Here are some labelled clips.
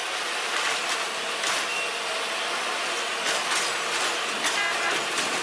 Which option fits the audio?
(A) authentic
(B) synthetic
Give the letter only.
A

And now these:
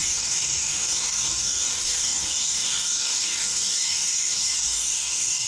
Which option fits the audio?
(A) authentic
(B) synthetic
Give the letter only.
B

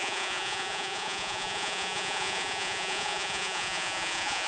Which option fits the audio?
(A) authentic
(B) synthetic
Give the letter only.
B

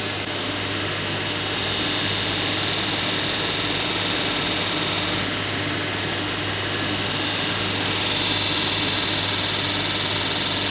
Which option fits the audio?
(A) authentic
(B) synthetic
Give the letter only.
A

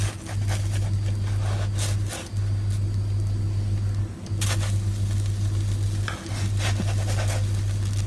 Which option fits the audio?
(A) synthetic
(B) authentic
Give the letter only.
B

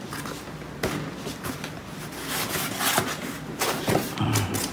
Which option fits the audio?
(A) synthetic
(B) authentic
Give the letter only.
B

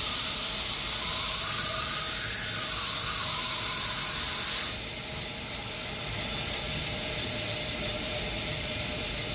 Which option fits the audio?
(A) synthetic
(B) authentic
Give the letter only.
B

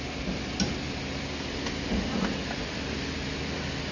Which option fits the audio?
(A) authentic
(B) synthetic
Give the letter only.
A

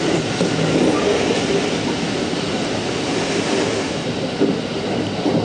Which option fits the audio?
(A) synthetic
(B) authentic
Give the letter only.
B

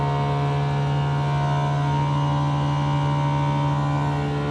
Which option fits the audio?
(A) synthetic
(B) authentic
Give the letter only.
B